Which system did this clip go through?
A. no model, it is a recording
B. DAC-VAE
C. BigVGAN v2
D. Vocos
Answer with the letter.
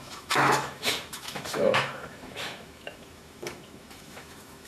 B